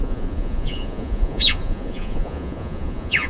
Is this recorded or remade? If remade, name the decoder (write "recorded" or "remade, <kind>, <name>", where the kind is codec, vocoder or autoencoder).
remade, vocoder, Vocos